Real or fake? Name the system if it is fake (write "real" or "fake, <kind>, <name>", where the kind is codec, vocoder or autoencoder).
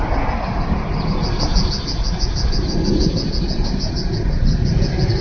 real